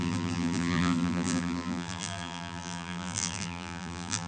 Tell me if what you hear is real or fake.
fake